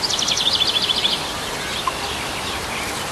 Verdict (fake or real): real